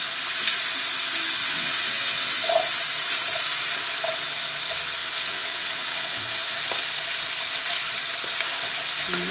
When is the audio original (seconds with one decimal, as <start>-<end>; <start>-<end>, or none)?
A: 0.0-1.4; 2.5-5.0; 6.5-9.3